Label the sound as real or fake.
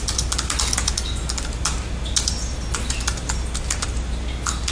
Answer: real